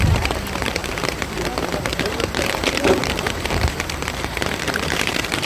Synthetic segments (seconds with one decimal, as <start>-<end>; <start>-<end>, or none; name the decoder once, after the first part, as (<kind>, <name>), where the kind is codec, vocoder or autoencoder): 0.0-5.4 (vocoder, BigVGAN v2)

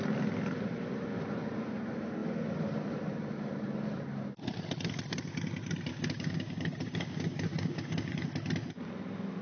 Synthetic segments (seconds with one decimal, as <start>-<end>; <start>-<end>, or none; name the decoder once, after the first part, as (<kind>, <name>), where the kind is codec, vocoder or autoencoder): 5.9-8.3 (codec, DAC)

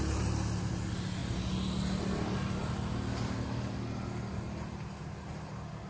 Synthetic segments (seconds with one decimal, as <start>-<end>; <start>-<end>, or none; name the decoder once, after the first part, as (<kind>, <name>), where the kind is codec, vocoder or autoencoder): none

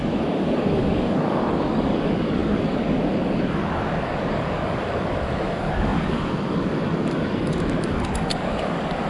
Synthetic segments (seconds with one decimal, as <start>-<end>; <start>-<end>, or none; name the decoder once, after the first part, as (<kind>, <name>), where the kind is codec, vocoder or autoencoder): 0.0-9.1 (codec, DAC)

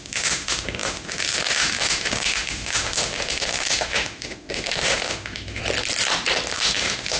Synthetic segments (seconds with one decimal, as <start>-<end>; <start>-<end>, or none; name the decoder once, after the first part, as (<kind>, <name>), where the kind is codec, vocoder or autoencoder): 0.0-5.6 (autoencoder, DAC-VAE); 6.5-7.2

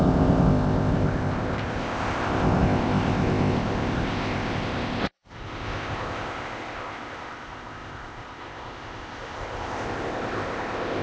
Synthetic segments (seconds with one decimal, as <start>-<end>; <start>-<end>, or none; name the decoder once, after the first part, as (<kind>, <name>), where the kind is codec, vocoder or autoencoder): 0.0-11.0 (codec, ZipCodec)

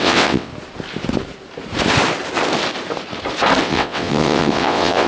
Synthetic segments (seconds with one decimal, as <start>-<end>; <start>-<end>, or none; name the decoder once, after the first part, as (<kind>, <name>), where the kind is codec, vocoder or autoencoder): 0.0-0.5 (vocoder, WaveNeXt); 3.6-5.1